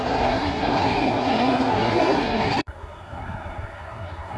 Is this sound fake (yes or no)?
yes